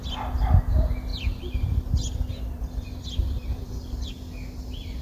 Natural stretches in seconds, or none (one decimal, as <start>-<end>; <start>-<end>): 0.0-1.1; 4.1-5.0